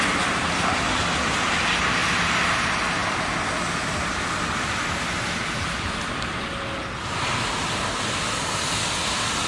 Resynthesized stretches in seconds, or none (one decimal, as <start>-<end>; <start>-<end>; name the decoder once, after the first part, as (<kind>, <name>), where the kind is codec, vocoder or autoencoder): none